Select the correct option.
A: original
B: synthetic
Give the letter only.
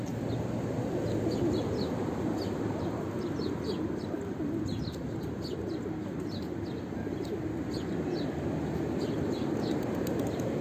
A